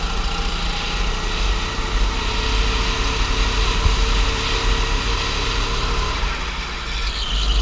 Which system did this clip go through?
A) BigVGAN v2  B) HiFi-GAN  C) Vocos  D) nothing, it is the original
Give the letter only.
D